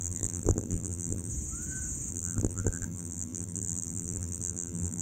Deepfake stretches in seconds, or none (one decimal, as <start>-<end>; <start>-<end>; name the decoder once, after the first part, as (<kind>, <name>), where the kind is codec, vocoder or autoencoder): 0.0-1.3 (vocoder, BigVGAN v2); 2.1-5.0